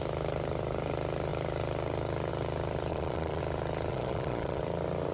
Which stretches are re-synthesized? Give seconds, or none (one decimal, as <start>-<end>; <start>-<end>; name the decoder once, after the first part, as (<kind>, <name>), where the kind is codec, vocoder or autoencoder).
2.9-3.4 (vocoder, Vocos); 3.9-4.6